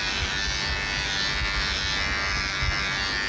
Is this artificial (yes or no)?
no